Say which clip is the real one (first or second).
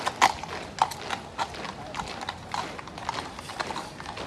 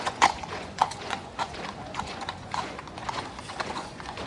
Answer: first